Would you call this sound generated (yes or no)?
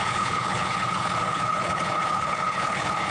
yes